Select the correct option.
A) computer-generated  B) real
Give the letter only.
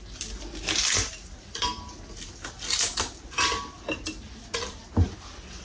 B